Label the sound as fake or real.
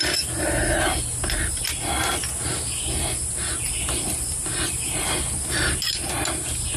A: real